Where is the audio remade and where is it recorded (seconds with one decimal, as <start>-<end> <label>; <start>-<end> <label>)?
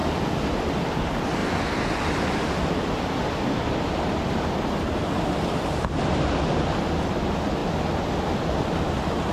0.0-9.3 recorded